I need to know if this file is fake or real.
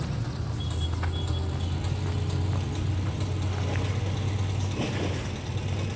real